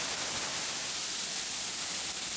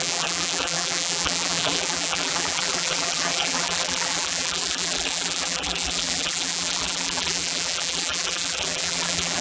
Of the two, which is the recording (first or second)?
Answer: first